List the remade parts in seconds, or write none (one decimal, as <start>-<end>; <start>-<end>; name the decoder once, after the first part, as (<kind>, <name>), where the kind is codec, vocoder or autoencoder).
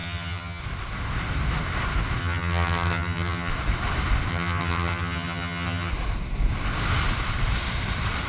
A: 0.0-0.6 (vocoder, HiFi-GAN); 2.2-3.5; 4.3-5.9